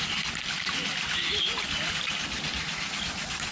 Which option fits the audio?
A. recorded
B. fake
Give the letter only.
A